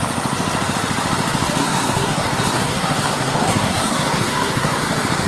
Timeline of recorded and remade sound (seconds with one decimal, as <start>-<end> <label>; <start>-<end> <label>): 0.0-1.6 recorded; 1.6-4.8 remade; 4.8-5.3 recorded